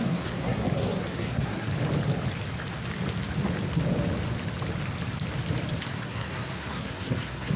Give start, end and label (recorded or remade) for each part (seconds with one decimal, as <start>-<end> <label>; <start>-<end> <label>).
0.0-1.7 remade; 1.7-5.9 recorded; 5.9-7.6 remade